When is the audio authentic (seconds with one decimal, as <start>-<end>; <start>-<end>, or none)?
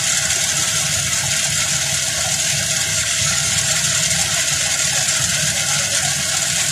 0.0-2.9; 3.5-6.7